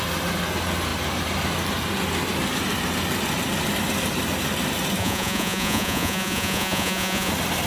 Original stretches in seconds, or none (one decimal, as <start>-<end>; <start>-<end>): 0.0-5.0; 7.3-7.7